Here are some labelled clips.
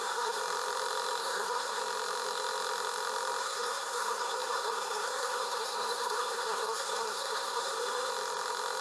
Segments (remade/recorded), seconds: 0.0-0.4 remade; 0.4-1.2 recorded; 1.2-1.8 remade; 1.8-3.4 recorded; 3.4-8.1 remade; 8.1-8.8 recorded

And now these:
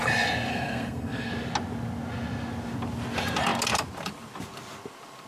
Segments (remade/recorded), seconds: 0.0-0.5 recorded; 0.5-1.3 remade; 1.3-5.3 recorded

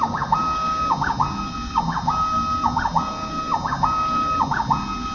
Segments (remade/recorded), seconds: 0.0-5.1 recorded